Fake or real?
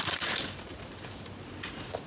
real